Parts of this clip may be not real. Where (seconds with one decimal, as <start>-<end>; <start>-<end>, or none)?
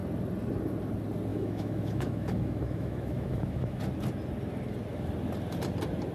1.3-3.8